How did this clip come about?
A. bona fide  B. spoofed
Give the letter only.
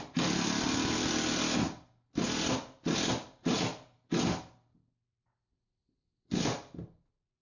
A